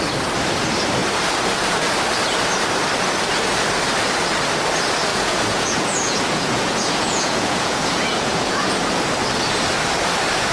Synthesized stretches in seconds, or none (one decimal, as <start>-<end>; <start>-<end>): 5.1-8.7